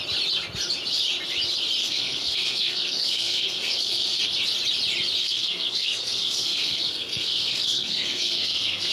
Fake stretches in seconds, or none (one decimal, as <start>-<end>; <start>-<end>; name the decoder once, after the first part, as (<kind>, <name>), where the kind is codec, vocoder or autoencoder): 1.8-4.2 (codec, SNAC); 5.2-8.9